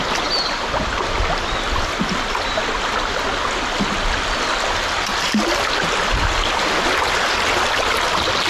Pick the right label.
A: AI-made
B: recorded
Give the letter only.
B